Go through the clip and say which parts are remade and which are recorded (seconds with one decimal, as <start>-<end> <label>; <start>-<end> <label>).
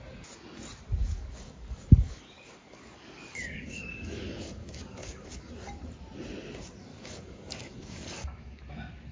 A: 0.0-1.0 recorded; 1.0-5.5 remade; 5.5-6.9 recorded; 6.9-8.6 remade; 8.6-9.1 recorded